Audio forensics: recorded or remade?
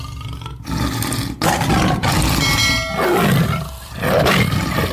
recorded